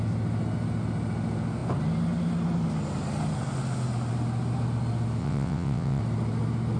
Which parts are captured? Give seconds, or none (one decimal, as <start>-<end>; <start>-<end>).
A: 0.0-5.2; 6.0-6.8